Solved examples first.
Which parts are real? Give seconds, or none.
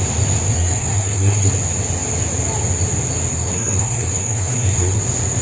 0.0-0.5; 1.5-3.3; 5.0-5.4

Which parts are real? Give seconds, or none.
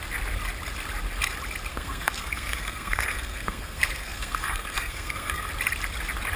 0.0-1.7; 5.5-6.4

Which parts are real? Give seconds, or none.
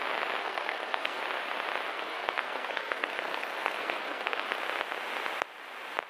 0.0-0.4; 1.2-1.9; 4.6-6.1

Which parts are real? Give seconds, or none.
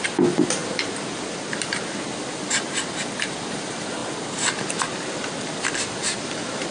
0.0-6.7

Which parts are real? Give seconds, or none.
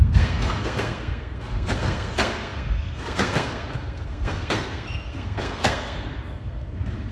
none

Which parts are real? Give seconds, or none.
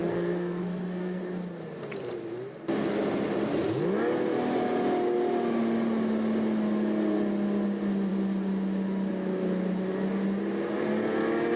1.2-11.6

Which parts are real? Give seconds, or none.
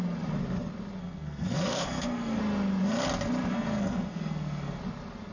0.0-1.0; 2.4-3.5; 4.8-5.3